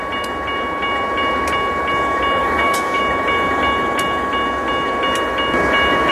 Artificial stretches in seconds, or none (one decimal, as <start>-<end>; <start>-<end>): 2.4-3.0